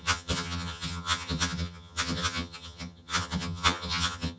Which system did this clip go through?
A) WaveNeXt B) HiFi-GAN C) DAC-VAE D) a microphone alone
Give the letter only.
B